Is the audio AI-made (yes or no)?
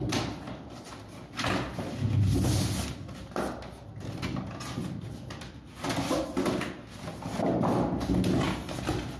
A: no